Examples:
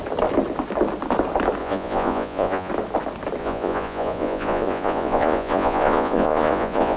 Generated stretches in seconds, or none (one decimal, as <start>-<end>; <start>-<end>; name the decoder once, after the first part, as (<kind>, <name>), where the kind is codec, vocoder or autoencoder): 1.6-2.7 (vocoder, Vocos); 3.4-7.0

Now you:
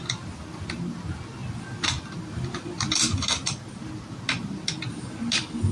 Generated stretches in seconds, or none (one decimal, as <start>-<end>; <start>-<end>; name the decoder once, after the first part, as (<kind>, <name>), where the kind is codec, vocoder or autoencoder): none

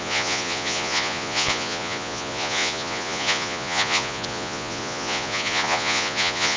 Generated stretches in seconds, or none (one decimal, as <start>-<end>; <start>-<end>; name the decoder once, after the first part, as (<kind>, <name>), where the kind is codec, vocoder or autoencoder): 0.0-6.6 (vocoder, Vocos)

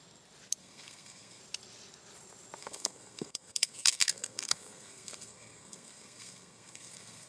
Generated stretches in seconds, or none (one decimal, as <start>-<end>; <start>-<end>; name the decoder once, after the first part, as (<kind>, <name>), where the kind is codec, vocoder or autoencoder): 0.6-1.4 (codec, SNAC); 2.6-7.3

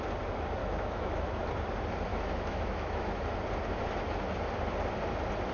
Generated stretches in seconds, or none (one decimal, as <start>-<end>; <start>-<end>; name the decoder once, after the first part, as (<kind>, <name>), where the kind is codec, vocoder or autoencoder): 0.6-1.3 (autoencoder, DAC-VAE); 2.1-3.2

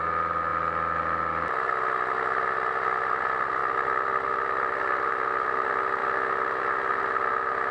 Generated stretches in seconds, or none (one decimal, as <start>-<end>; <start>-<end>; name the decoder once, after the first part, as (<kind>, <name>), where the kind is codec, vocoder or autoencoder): 0.0-0.5 (vocoder, BigVGAN v2); 3.1-6.0